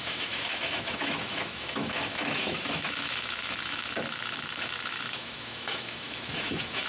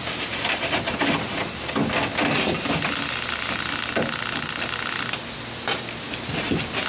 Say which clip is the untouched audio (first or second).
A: second